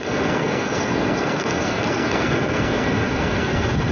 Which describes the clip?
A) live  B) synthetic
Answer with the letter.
B